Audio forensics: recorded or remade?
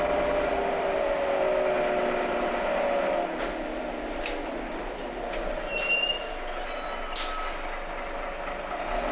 recorded